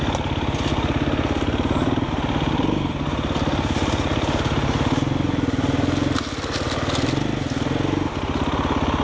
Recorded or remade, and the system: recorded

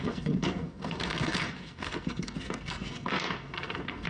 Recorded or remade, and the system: remade, codec, SNAC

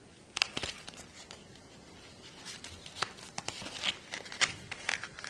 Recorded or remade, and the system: recorded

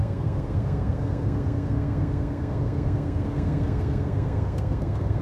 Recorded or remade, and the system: remade, codec, SNAC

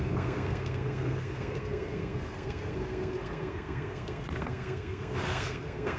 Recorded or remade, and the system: remade, codec, SNAC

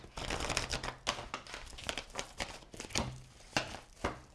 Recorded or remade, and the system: recorded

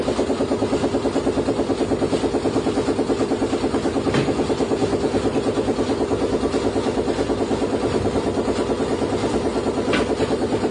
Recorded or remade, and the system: recorded